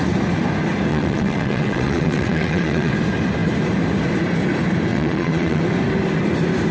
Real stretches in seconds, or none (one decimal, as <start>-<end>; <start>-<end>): 0.0-0.9; 2.9-4.9; 5.6-6.7